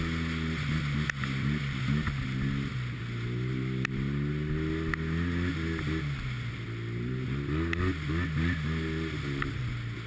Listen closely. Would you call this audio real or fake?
real